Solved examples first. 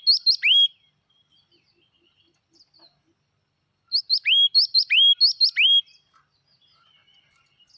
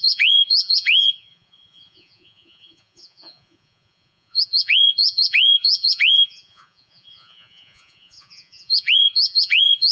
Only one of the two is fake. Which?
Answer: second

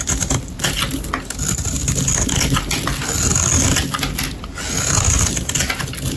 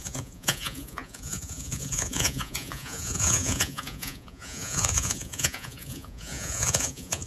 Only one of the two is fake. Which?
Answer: second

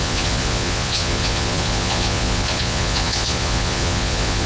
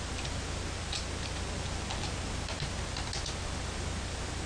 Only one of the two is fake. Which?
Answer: first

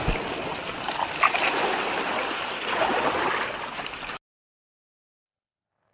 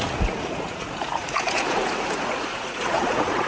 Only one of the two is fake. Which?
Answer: second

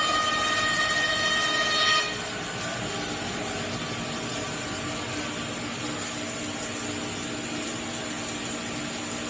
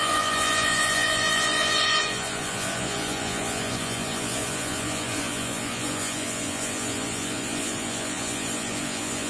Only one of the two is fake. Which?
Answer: second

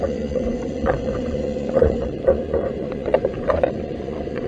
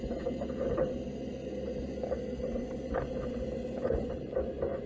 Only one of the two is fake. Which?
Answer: first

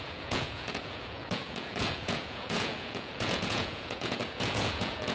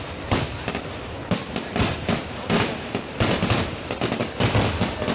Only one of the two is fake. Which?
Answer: first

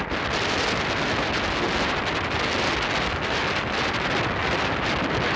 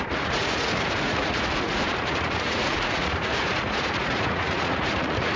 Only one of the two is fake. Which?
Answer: second